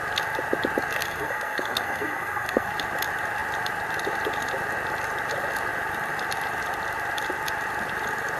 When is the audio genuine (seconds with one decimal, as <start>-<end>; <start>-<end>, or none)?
0.0-1.0; 2.7-8.4